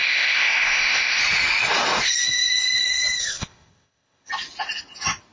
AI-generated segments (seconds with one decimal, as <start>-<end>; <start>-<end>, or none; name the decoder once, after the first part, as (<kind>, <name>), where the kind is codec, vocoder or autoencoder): 0.0-1.2 (codec, ZipCodec); 3.2-4.3